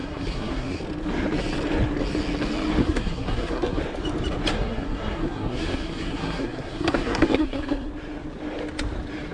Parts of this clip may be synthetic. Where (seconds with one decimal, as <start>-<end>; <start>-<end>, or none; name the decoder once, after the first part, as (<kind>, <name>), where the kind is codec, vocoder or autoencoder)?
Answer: 0.0-0.8 (codec, SNAC); 2.8-3.8; 4.5-7.9